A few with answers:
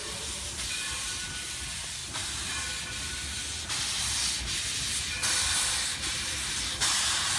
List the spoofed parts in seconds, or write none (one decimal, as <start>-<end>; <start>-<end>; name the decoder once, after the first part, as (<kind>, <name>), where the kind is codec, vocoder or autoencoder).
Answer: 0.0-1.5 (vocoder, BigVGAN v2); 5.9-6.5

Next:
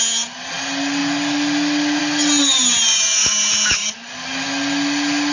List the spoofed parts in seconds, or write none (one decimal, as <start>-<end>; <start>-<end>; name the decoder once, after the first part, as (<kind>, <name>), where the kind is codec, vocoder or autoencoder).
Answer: none

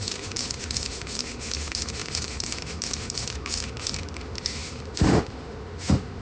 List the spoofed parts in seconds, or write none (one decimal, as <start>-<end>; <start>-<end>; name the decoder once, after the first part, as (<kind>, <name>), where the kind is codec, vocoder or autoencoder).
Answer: 0.0-6.2 (autoencoder, DAC-VAE)

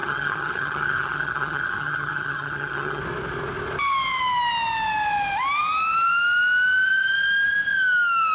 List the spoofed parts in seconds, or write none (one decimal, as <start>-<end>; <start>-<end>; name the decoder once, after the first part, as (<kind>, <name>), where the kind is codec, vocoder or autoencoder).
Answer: 0.0-3.0 (vocoder, HiFi-GAN)

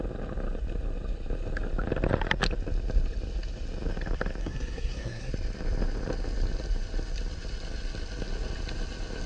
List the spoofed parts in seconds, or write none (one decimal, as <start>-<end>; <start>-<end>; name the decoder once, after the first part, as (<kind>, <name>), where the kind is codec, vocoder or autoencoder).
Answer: 4.4-5.3 (codec, SNAC)

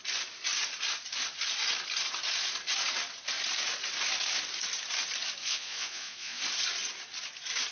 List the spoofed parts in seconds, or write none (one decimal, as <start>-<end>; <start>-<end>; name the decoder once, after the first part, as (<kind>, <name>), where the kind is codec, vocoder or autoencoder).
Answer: 5.4-6.4 (vocoder, Vocos)

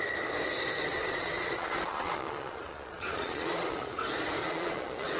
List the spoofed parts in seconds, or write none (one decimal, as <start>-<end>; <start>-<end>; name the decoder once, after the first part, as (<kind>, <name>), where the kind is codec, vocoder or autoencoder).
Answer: 0.9-4.0 (vocoder, Vocos); 4.4-5.2